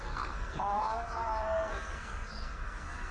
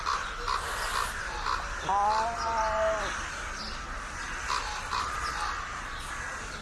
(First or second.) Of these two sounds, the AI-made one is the first